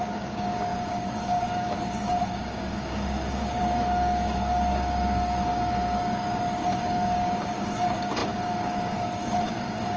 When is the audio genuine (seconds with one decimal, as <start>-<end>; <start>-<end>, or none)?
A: none